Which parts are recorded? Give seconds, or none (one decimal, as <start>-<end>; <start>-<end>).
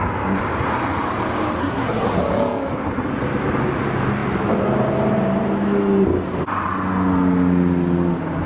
0.0-1.6; 2.2-8.5